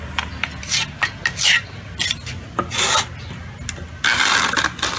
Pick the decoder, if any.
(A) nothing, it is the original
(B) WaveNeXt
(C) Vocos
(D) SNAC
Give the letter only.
A